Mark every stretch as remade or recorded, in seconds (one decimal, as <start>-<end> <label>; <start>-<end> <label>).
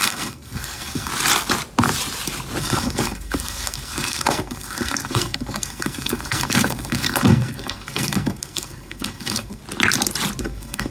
0.0-1.1 remade; 1.1-2.6 recorded; 2.6-9.6 remade; 9.6-10.4 recorded; 10.4-10.9 remade